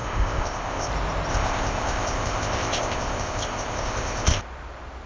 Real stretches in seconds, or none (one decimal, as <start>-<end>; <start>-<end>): 0.9-1.3; 4.4-5.1